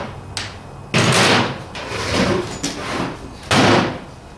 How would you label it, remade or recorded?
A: recorded